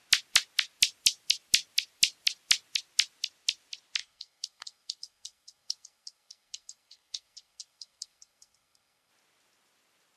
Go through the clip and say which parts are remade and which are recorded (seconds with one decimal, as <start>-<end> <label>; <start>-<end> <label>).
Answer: 0.0-4.0 recorded; 4.0-9.1 remade; 9.1-10.2 recorded